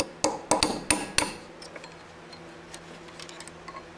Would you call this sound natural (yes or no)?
yes